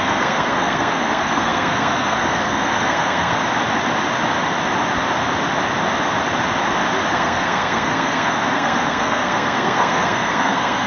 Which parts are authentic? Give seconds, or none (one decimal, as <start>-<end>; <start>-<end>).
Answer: 3.3-7.1